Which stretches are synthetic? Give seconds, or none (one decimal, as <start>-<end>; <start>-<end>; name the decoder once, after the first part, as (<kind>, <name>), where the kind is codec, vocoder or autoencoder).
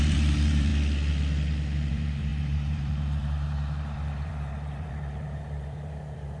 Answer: 0.0-0.7 (vocoder, BigVGAN v2); 1.9-6.4